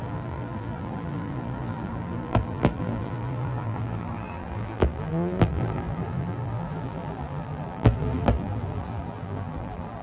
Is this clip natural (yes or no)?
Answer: no